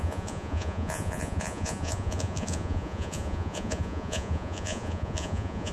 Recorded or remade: remade